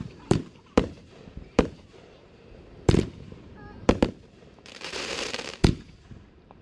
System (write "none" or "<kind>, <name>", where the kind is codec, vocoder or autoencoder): vocoder, BigVGAN v2